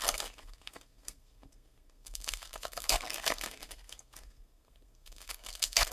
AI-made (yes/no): yes